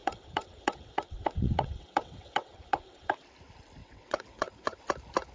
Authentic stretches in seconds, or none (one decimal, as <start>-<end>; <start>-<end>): 3.2-3.8; 4.8-5.3